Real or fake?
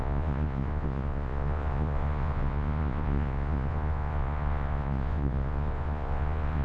fake